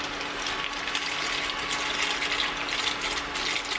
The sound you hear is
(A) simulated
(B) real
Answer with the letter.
B